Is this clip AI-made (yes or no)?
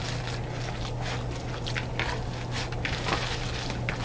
no